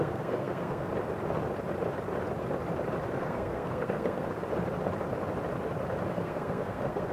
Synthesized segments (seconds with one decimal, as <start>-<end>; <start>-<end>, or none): 0.0-0.9; 3.1-4.3; 6.1-7.1